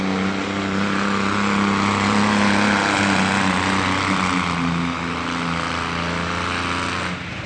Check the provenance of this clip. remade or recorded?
recorded